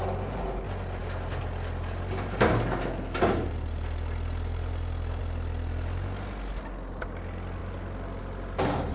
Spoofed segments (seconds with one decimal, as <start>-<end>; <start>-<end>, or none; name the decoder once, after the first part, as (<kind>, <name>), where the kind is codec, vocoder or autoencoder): none